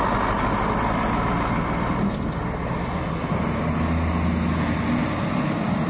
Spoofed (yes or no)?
no